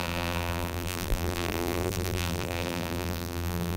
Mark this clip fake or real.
fake